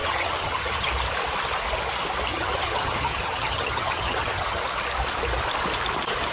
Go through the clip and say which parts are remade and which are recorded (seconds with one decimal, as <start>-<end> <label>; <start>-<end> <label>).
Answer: 0.0-0.9 remade; 0.9-2.3 recorded; 2.3-4.6 remade; 4.6-6.3 recorded